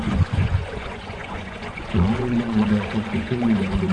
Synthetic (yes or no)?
yes